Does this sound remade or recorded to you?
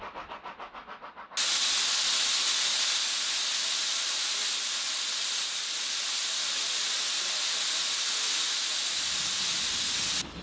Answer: recorded